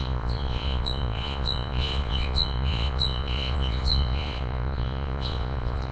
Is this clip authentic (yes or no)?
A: no